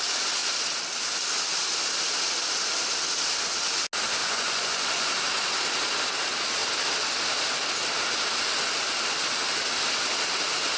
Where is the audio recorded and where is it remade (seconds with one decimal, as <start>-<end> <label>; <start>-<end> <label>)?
0.0-4.2 recorded; 4.2-5.1 remade; 5.1-10.8 recorded